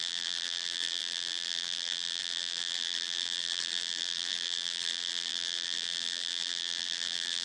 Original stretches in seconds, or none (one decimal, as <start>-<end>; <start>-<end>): none